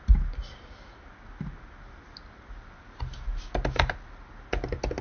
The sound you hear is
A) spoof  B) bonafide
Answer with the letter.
B